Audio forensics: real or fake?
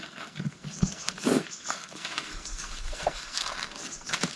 fake